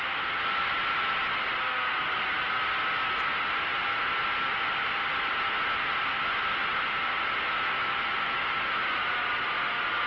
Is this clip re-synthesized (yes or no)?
no